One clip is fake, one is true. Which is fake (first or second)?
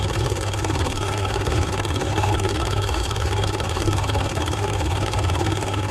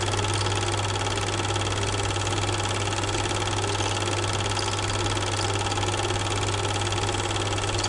first